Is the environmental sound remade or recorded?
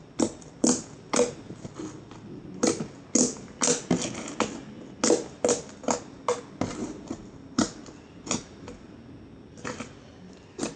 recorded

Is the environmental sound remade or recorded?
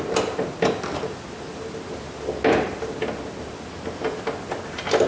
recorded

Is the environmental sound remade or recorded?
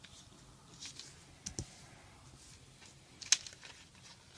recorded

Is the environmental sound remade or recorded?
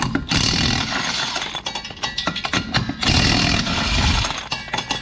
recorded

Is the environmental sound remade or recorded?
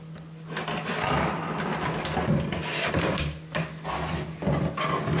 recorded